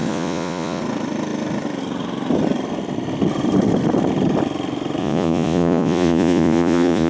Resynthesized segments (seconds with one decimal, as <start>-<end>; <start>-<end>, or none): 0.0-0.8; 5.0-7.1